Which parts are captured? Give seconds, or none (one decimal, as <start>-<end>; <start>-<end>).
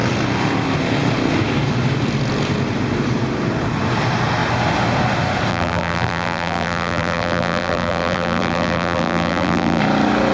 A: 0.0-5.5; 9.8-10.3